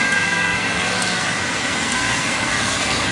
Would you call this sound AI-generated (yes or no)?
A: yes